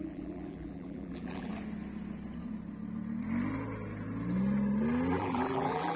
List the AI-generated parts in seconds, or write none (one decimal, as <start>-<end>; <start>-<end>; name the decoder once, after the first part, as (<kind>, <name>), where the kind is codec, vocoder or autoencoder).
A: 0.0-1.5 (vocoder, BigVGAN v2); 5.1-6.0